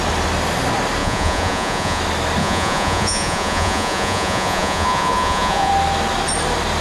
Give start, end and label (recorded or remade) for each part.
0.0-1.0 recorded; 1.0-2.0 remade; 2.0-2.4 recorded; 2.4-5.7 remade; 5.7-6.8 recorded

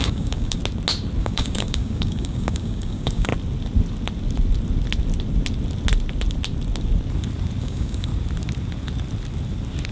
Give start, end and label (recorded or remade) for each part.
0.0-0.6 remade; 0.6-1.2 recorded; 1.2-3.3 remade; 3.3-7.6 recorded; 7.6-8.1 remade; 8.1-9.9 recorded

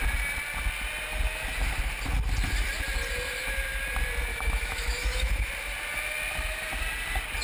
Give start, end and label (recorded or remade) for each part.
0.0-4.3 recorded; 4.3-5.5 remade; 5.5-7.4 recorded

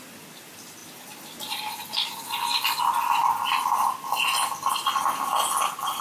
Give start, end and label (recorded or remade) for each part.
0.0-6.0 recorded

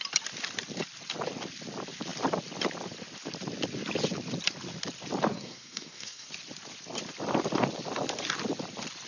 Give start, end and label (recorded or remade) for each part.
0.0-5.3 recorded; 5.3-6.3 remade; 6.3-9.1 recorded